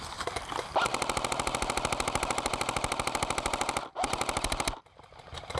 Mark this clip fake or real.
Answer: real